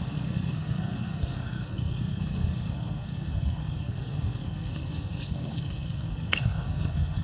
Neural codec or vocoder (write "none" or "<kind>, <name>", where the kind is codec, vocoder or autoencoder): codec, SNAC